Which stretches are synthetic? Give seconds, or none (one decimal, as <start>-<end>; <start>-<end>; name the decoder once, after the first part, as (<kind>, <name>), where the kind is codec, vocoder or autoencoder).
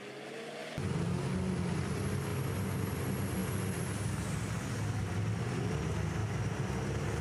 none